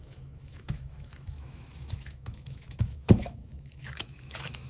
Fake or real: fake